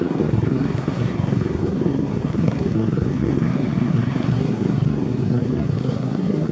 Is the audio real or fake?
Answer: fake